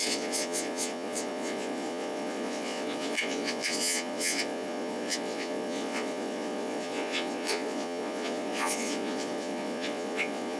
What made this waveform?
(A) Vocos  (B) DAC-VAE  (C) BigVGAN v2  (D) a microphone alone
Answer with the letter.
A